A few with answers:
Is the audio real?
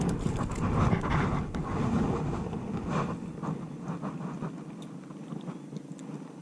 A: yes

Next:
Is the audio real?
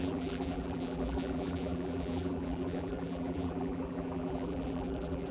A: no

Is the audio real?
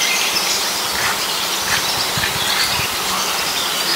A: yes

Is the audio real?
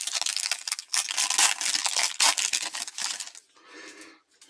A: yes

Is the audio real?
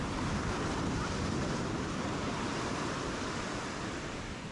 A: no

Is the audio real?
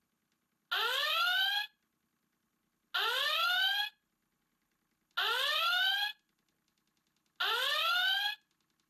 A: yes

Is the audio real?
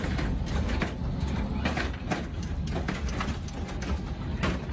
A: yes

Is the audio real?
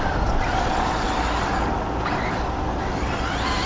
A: yes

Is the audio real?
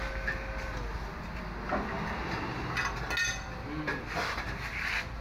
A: yes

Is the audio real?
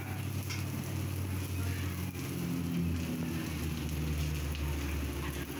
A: yes